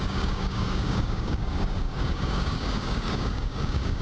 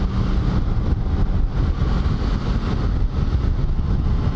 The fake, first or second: first